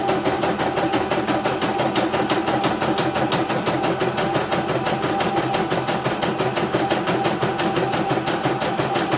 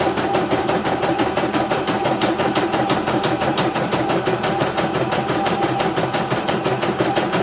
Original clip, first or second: first